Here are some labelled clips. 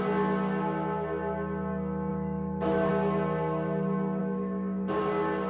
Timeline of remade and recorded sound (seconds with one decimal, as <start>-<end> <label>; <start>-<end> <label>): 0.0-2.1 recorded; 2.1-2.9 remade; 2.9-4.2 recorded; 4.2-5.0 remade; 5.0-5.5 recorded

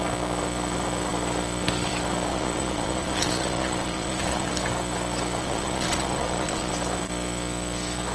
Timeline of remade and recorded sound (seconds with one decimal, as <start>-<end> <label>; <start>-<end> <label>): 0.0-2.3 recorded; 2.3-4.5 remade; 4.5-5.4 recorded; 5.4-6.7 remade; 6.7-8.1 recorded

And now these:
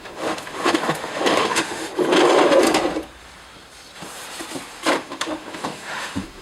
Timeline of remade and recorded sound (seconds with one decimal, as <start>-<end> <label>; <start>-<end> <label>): 0.0-1.9 remade; 1.9-5.0 recorded; 5.0-6.4 remade

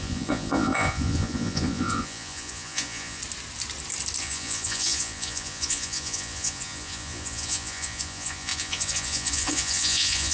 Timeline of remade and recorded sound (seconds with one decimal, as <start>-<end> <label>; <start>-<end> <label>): 0.0-3.2 remade; 3.2-4.2 recorded; 4.2-10.3 remade

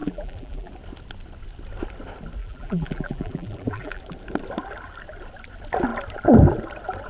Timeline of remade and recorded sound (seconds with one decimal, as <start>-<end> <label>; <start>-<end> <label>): 0.0-0.7 remade; 0.7-2.4 recorded; 2.4-4.0 remade; 4.0-7.1 recorded

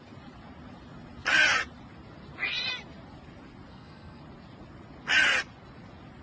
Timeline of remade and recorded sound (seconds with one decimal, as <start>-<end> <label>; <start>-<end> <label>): 0.0-3.7 recorded; 3.7-4.2 remade; 4.2-6.2 recorded

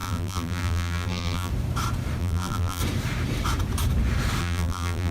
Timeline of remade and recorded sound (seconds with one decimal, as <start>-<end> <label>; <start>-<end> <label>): 0.0-1.5 remade; 1.5-2.2 recorded; 2.2-2.8 remade; 2.8-4.4 recorded; 4.4-5.1 remade

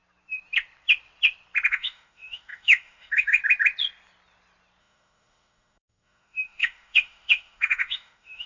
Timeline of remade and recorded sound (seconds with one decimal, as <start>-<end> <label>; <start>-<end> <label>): 0.0-1.7 recorded; 1.7-3.4 remade; 3.4-4.8 recorded; 4.8-8.5 remade